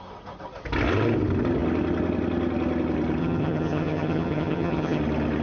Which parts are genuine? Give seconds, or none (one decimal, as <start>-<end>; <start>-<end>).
0.0-3.2; 5.0-5.4